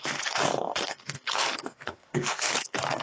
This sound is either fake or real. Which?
fake